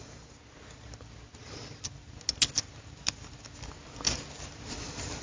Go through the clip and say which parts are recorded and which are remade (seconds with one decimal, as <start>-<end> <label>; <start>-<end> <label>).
0.0-5.2 recorded